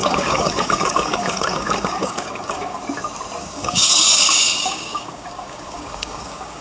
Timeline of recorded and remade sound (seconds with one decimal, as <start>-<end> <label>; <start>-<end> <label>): 0.0-2.8 remade; 2.8-3.4 recorded; 3.4-6.6 remade